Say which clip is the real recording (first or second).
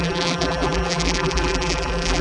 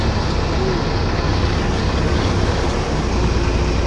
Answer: second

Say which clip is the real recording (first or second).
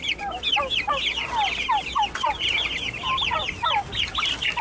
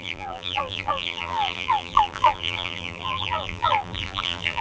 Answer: first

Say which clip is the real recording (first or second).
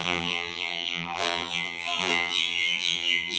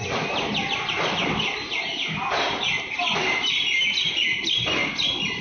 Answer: second